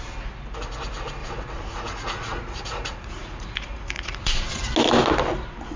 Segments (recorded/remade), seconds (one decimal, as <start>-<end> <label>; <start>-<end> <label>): 0.0-1.2 recorded; 1.2-4.7 remade; 4.7-5.8 recorded